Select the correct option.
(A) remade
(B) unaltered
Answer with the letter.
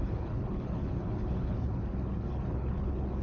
A